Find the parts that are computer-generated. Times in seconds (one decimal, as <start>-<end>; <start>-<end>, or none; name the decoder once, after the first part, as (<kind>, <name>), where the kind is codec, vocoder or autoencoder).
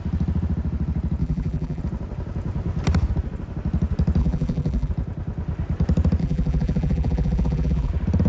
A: 1.2-1.8 (vocoder, BigVGAN v2); 4.2-4.9; 6.2-7.9